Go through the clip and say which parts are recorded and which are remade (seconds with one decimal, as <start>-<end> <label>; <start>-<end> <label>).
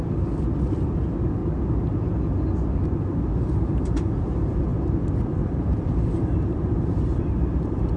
0.0-1.4 remade; 1.4-3.1 recorded; 3.1-8.0 remade